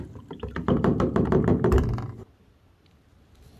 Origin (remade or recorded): recorded